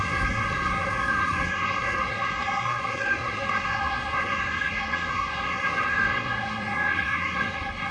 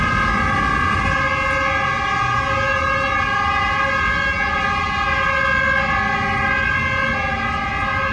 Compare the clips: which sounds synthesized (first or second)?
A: first